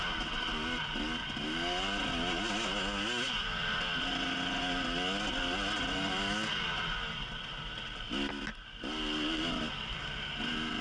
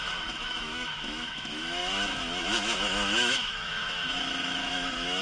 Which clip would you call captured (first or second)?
first